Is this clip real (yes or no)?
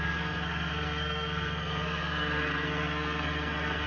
no